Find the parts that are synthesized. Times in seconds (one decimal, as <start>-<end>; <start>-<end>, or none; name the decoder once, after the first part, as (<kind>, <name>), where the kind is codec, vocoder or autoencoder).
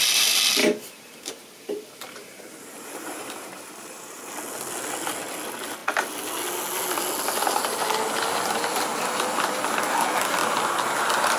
0.6-4.2 (vocoder, BigVGAN v2)